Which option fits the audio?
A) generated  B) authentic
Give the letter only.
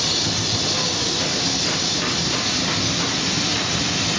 B